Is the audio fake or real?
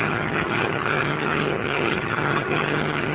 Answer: fake